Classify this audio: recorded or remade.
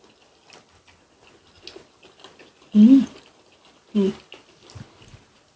recorded